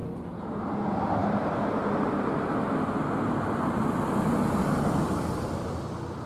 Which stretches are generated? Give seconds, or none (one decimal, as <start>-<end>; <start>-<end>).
0.0-0.6